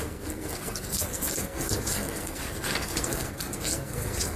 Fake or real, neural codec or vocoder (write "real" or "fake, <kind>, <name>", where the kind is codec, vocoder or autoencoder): fake, codec, SNAC